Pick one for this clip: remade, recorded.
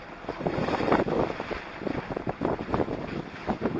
recorded